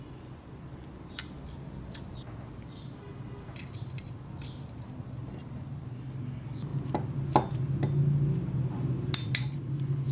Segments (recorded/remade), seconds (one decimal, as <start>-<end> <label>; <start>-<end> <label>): 0.0-10.1 recorded